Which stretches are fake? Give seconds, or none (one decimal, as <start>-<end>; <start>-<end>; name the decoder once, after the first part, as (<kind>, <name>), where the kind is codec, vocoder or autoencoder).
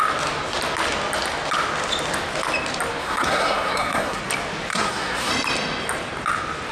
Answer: 3.0-4.2 (codec, SNAC); 4.7-5.3